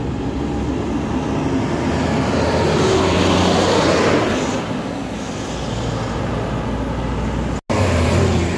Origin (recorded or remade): recorded